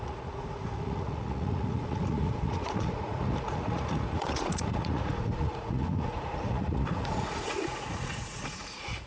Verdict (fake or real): fake